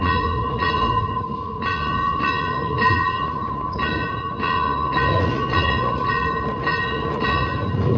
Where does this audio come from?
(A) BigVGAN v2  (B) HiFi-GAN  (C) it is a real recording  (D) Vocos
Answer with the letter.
D